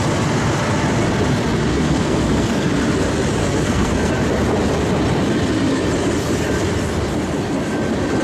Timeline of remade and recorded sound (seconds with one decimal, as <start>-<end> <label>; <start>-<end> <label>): 0.0-1.7 recorded; 1.7-2.7 remade; 2.7-3.4 recorded; 3.4-4.1 remade; 4.1-8.2 recorded